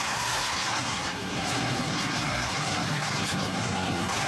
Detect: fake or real fake